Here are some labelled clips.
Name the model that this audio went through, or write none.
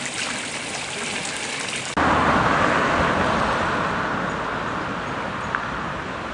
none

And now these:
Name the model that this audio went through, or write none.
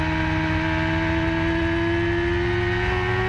none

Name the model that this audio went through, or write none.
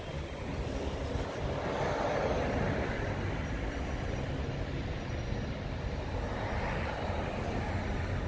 none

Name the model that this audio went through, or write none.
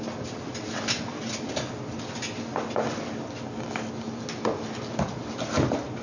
none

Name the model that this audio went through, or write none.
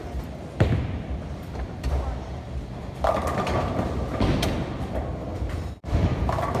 none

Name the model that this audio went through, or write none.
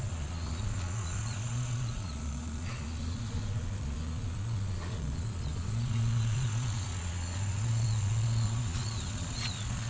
vocoder, Vocos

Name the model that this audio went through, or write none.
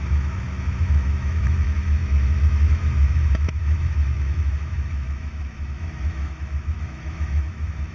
autoencoder, DAC-VAE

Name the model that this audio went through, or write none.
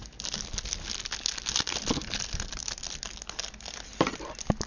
none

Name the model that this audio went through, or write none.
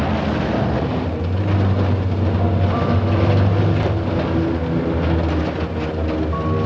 none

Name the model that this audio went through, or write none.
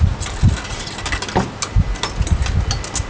none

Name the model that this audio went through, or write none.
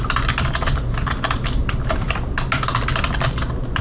none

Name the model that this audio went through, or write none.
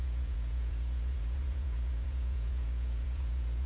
vocoder, Vocos